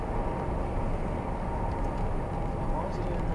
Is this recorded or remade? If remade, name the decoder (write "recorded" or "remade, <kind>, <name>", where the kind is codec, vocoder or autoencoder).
recorded